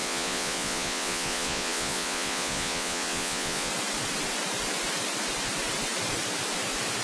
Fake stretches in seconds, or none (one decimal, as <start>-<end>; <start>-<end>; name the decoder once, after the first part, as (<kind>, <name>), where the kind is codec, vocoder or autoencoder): 0.0-3.7 (vocoder, Vocos)